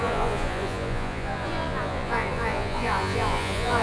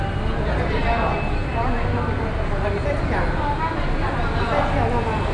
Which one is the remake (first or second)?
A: first